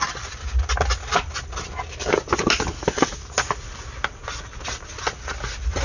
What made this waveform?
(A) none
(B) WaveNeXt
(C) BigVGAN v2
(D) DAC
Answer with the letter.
A